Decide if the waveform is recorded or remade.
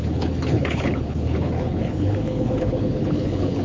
remade